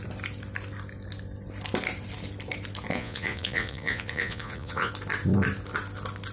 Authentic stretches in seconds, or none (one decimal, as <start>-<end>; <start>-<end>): 0.0-2.9; 4.9-6.3